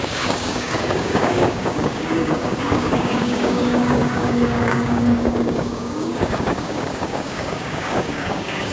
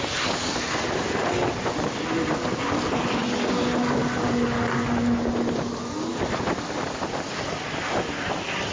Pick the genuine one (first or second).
second